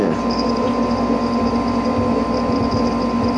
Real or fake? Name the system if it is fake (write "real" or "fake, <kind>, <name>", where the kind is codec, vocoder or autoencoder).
real